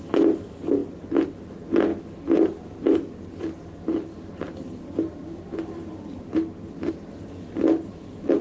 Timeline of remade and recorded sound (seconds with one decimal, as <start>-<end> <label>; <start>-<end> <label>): 0.0-8.4 recorded